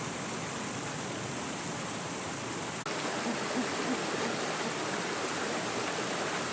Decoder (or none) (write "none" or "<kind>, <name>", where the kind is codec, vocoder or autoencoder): none